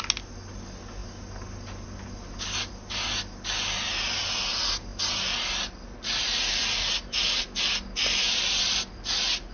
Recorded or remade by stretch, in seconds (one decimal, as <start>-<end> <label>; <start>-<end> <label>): 0.0-9.5 recorded